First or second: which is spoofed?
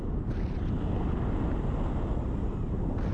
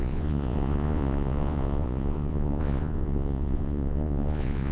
second